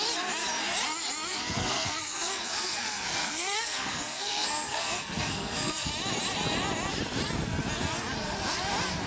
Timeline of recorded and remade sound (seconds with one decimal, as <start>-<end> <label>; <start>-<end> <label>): 0.0-1.3 recorded; 1.3-5.9 remade; 5.9-9.1 recorded